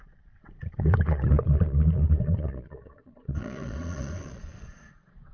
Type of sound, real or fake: fake